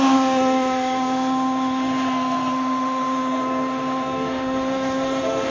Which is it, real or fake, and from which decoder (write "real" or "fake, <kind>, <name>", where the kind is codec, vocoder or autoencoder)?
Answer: fake, autoencoder, DAC-VAE